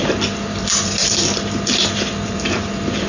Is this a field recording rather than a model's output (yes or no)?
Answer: no